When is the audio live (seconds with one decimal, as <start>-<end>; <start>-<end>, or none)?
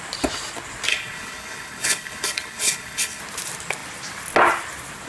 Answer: 0.0-0.9; 3.2-5.1